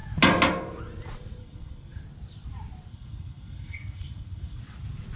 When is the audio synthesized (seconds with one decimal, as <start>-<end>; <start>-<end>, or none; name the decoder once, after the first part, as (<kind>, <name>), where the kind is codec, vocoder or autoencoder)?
1.4-2.0 (codec, SNAC); 2.9-4.6